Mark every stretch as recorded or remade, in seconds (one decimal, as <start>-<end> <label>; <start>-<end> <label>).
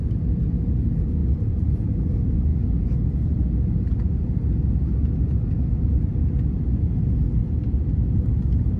0.0-1.2 recorded; 1.2-2.1 remade; 2.1-7.4 recorded; 7.4-8.1 remade; 8.1-8.8 recorded